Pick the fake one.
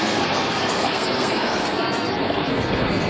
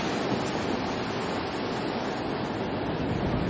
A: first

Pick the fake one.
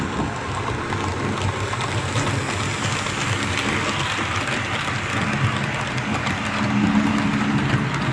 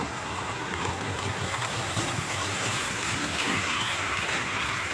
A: second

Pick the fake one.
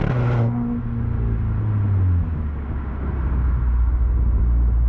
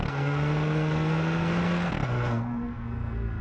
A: second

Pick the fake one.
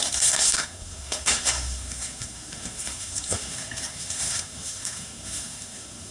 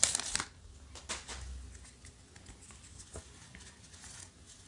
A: first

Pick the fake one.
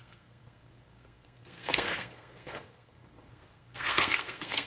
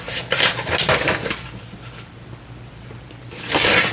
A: first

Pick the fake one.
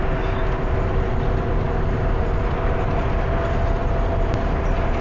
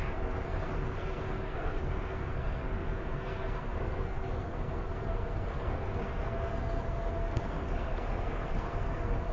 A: second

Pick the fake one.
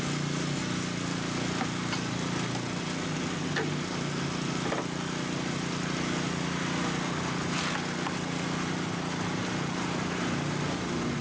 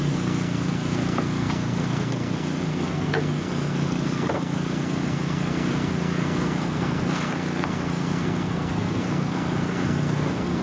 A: second